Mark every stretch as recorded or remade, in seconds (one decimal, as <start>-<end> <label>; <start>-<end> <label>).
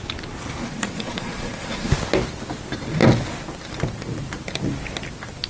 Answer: 0.0-0.6 recorded; 0.6-1.9 remade; 1.9-5.5 recorded